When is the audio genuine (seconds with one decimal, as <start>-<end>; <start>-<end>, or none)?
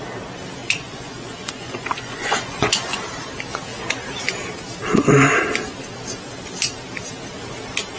0.0-0.6; 3.0-8.0